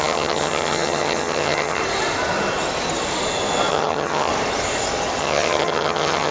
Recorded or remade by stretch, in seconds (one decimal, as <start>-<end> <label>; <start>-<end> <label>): 0.0-1.8 remade; 1.8-3.7 recorded; 3.7-4.3 remade; 4.3-5.2 recorded; 5.2-6.3 remade